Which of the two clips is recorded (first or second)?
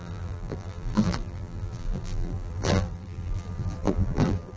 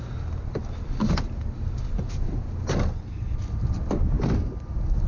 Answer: second